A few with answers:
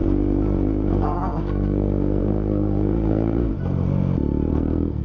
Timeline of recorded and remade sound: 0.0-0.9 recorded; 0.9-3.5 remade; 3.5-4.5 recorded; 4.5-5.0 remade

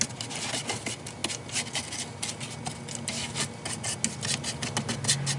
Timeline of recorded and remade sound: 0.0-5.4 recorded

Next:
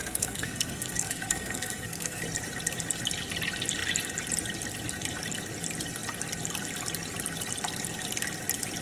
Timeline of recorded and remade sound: 0.0-2.2 remade; 2.2-8.8 recorded

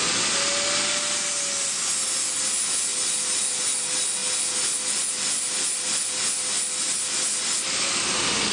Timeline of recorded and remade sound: 0.0-8.5 recorded